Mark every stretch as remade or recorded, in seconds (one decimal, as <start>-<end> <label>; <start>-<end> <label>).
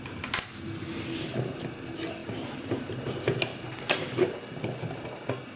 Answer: 0.0-5.6 recorded